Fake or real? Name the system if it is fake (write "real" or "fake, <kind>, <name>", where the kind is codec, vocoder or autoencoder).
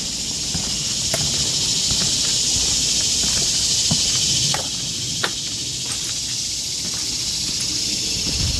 real